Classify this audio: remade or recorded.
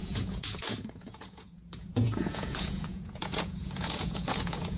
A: remade